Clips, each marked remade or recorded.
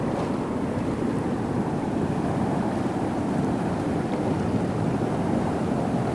remade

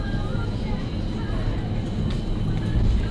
recorded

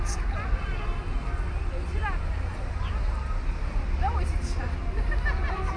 recorded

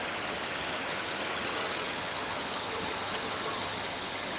remade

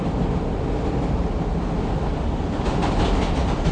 recorded